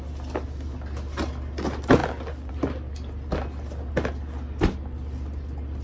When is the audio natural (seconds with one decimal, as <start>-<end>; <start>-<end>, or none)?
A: 0.0-5.8